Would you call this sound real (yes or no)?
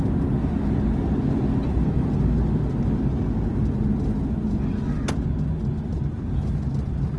yes